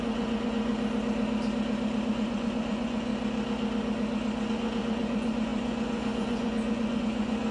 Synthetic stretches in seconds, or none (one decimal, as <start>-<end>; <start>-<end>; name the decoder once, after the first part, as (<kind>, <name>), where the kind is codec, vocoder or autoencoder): 0.0-0.7 (vocoder, Vocos); 2.1-3.1; 4.5-7.5